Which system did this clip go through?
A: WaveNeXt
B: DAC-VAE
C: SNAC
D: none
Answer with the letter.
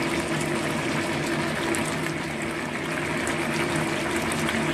D